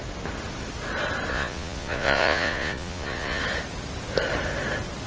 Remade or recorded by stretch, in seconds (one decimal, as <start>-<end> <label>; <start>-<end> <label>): 0.0-1.3 recorded; 1.3-3.4 remade; 3.4-5.1 recorded